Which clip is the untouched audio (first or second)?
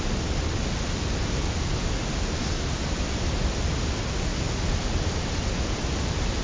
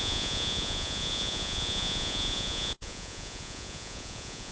first